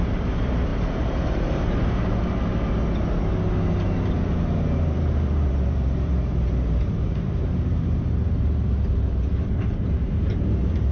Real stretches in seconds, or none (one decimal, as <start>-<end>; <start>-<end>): 2.5-4.1